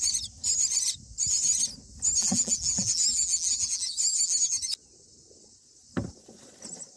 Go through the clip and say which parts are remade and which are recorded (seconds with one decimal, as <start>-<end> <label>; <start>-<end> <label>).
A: 0.0-2.2 recorded; 2.2-4.6 remade; 4.6-7.0 recorded